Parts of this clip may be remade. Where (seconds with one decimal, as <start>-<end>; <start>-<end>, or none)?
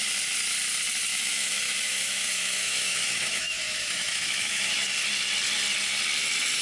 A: 1.1-4.7